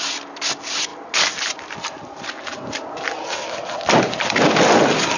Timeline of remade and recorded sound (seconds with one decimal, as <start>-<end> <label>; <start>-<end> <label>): 0.0-5.2 recorded